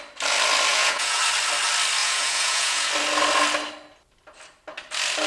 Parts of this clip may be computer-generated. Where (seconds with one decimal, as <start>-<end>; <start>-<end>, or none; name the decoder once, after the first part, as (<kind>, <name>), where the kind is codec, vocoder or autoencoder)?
0.7-1.2 (vocoder, Vocos); 2.0-2.9